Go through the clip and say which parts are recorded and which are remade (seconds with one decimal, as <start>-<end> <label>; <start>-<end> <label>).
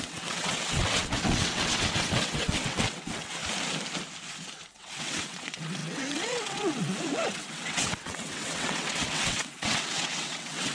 0.0-3.4 remade; 3.4-4.7 recorded; 4.7-10.7 remade